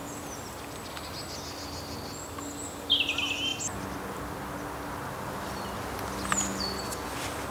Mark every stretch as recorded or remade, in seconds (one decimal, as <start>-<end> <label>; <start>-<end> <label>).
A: 0.0-7.5 recorded